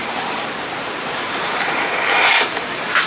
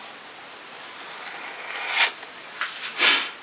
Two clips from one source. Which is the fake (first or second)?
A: first